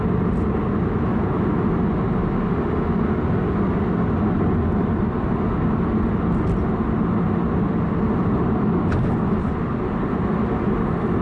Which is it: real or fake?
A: real